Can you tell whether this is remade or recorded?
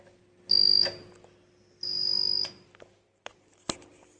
recorded